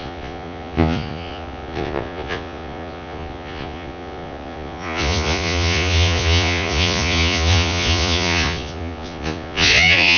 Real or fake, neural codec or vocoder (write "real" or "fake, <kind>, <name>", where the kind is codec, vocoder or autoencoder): fake, vocoder, Vocos